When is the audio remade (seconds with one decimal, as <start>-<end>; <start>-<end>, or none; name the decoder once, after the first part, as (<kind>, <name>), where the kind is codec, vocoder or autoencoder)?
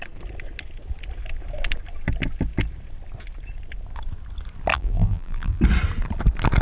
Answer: 4.7-5.6 (vocoder, BigVGAN v2)